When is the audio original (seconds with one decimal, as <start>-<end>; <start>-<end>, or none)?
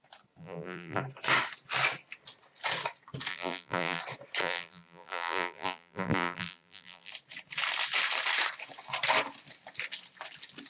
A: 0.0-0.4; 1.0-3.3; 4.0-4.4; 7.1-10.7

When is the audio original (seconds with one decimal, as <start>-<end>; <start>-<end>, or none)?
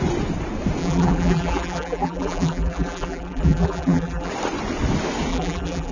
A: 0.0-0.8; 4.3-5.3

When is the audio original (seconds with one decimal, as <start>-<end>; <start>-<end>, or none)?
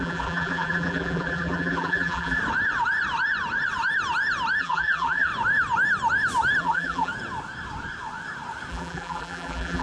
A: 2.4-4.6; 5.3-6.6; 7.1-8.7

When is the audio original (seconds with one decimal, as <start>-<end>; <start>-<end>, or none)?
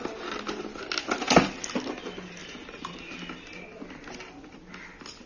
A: 0.0-2.4; 3.0-5.3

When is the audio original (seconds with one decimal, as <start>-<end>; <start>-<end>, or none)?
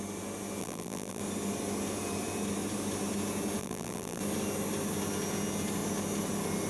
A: 0.0-0.6; 1.2-3.6; 4.2-6.7